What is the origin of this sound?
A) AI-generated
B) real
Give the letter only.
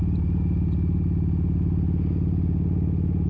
B